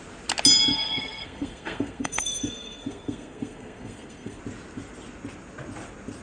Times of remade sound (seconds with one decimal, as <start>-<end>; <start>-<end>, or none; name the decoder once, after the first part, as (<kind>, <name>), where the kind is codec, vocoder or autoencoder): 0.7-4.4 (codec, SNAC)